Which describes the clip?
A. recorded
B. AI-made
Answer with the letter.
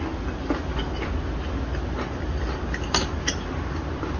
A